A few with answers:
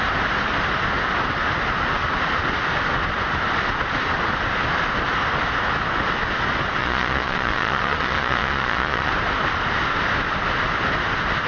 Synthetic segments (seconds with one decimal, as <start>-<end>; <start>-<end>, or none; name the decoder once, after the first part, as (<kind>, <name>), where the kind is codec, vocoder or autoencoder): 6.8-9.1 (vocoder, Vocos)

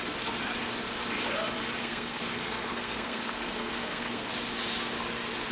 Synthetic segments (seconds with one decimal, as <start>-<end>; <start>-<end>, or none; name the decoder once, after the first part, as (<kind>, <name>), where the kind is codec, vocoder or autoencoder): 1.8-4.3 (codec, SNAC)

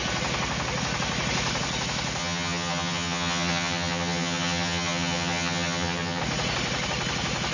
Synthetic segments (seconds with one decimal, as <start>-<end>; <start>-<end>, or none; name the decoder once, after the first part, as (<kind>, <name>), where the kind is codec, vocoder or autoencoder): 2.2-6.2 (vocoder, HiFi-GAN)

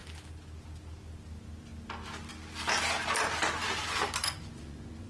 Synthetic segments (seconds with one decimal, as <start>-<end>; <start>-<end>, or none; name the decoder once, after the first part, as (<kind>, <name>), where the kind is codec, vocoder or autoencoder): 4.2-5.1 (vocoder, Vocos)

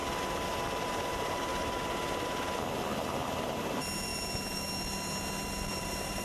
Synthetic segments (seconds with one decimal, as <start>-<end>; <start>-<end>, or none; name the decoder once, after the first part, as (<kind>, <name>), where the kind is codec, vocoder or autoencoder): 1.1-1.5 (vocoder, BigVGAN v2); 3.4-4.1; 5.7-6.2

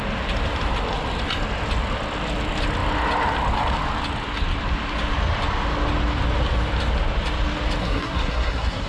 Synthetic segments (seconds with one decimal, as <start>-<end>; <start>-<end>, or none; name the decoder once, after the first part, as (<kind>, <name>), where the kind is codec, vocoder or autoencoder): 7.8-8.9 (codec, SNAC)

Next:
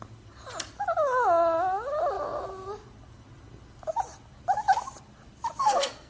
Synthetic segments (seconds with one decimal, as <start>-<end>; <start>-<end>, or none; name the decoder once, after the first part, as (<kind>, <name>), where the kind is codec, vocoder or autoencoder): 5.6-6.1 (codec, SNAC)

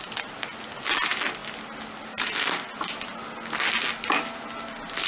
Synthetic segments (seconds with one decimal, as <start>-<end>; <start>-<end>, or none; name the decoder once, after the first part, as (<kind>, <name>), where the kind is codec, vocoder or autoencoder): none